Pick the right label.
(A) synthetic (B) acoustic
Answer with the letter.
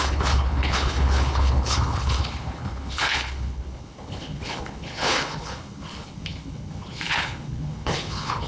A